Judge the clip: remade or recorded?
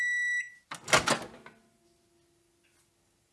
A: recorded